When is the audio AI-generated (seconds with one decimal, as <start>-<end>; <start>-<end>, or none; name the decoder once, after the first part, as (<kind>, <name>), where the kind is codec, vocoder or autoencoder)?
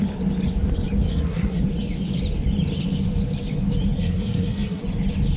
1.1-1.6 (codec, SNAC); 4.0-4.8